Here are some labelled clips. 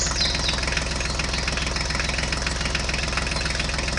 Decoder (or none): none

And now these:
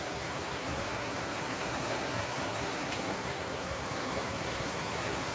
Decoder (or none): codec, SNAC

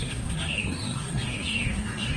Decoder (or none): codec, SNAC